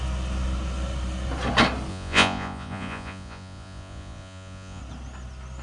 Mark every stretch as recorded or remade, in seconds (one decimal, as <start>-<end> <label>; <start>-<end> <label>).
0.0-1.9 recorded; 1.9-4.8 remade; 4.8-5.6 recorded